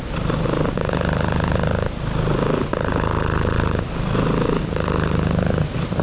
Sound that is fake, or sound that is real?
real